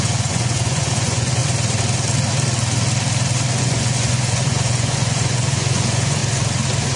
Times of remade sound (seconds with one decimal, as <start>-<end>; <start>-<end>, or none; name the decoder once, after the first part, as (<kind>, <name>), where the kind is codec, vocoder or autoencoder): 0.0-1.4 (vocoder, Vocos); 3.6-6.2